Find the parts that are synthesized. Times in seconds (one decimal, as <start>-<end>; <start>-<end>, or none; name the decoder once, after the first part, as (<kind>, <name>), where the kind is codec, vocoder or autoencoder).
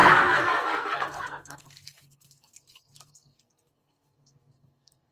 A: 0.0-5.1 (codec, SNAC)